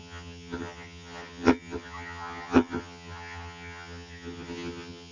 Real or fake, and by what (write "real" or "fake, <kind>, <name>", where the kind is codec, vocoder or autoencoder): fake, vocoder, HiFi-GAN